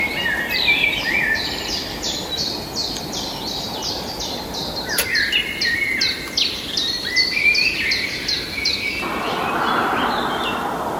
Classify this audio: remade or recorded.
remade